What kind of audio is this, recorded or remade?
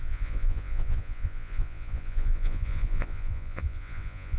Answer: remade